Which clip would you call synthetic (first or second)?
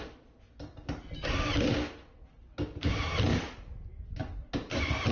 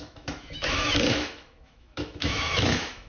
second